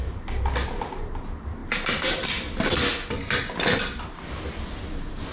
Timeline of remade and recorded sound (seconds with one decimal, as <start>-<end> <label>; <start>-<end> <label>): 0.0-5.3 recorded